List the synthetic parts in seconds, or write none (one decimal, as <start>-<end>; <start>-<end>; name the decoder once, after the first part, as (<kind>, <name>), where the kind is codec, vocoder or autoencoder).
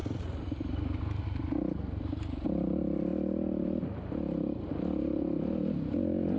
none